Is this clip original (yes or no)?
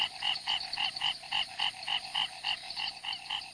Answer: no